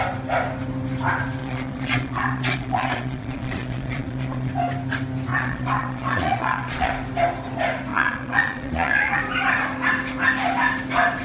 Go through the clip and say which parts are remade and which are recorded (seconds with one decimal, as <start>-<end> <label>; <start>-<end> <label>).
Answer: 0.0-1.4 recorded; 1.4-4.5 remade; 4.5-5.3 recorded; 5.3-6.9 remade; 6.9-7.9 recorded; 7.9-9.2 remade; 9.2-11.2 recorded